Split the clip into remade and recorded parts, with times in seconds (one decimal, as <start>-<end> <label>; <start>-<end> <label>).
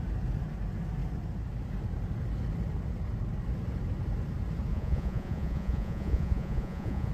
0.0-4.7 recorded; 4.7-7.1 remade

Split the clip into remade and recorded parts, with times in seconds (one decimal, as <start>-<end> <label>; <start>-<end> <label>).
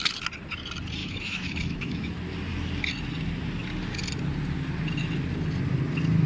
0.0-1.0 recorded; 1.0-2.1 remade; 2.1-6.3 recorded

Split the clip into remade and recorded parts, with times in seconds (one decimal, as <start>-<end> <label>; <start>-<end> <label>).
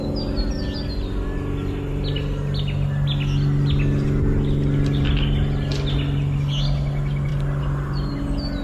0.0-8.6 recorded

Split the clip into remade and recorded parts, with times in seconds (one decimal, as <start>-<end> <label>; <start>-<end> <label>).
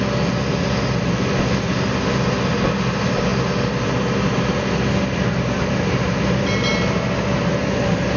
0.0-8.2 recorded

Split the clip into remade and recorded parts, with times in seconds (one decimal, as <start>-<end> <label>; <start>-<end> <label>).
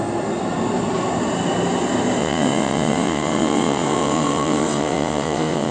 0.0-2.2 recorded; 2.2-5.7 remade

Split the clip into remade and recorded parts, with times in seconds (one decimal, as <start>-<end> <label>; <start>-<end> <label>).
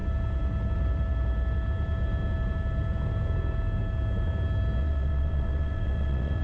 0.0-4.8 recorded; 4.8-6.4 remade